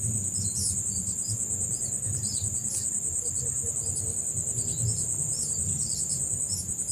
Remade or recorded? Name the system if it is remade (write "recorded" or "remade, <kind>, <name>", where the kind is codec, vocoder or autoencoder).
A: recorded